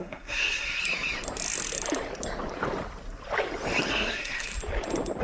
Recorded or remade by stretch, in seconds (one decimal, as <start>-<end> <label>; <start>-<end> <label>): 0.0-0.8 remade; 0.8-3.9 recorded; 3.9-4.5 remade; 4.5-5.2 recorded